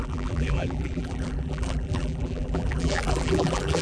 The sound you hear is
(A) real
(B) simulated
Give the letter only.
B